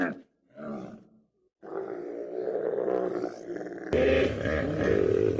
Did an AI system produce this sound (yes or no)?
no